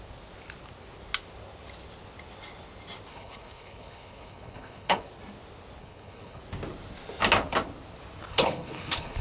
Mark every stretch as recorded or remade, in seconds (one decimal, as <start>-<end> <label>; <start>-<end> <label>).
0.0-3.1 recorded; 3.1-5.1 remade; 5.1-5.8 recorded; 5.8-6.4 remade; 6.4-8.3 recorded; 8.3-9.2 remade